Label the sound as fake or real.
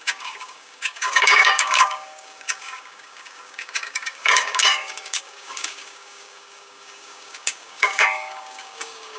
fake